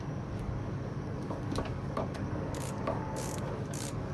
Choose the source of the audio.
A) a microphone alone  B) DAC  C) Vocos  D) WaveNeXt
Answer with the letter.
B